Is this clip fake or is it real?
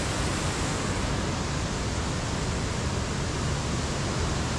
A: real